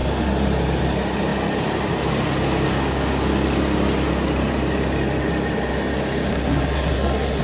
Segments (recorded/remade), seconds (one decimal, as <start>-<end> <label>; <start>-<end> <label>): 0.0-6.3 recorded; 6.3-7.4 remade